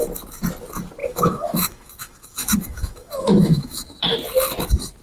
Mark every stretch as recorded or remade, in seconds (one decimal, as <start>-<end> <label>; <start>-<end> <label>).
0.0-1.0 recorded; 1.0-4.0 remade; 4.0-5.0 recorded

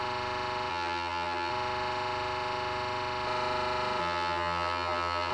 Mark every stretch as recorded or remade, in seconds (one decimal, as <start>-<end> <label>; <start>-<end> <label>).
0.0-0.7 recorded; 0.7-1.5 remade; 1.5-4.0 recorded; 4.0-5.3 remade

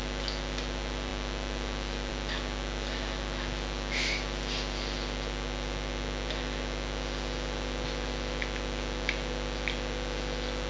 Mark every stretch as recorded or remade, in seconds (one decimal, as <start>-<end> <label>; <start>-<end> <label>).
0.0-10.7 recorded

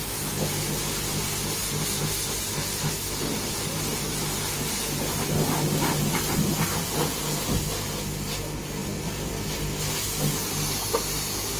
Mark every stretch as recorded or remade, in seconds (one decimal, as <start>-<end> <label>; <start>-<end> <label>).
0.0-11.6 recorded

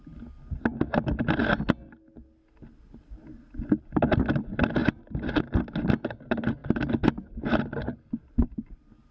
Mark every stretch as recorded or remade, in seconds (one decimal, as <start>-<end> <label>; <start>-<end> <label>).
0.0-9.1 recorded